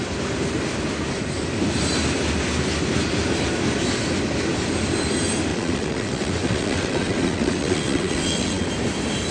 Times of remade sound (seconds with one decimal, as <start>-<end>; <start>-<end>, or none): 5.5-8.7

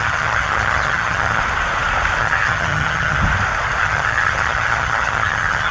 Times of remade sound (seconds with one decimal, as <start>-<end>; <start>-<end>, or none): 0.0-1.4; 2.2-3.2; 3.8-5.7

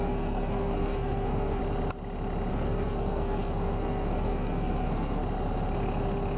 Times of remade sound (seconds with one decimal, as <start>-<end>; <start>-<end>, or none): 0.0-1.6; 2.5-5.2

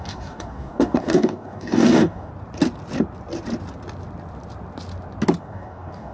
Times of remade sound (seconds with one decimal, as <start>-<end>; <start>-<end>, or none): 0.0-2.3; 5.4-6.1

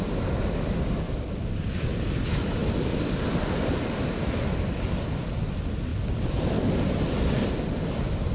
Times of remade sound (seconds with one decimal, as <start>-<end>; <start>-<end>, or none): none

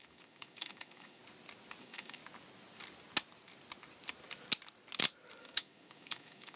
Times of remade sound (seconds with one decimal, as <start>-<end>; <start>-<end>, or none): 0.0-1.2; 1.8-2.2; 5.4-6.6

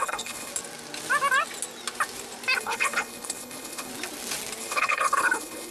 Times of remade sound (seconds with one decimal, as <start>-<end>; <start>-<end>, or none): 0.0-0.5; 2.6-3.9; 4.6-5.7

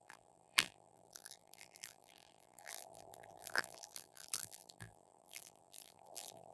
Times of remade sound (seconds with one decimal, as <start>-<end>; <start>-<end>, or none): 0.0-6.5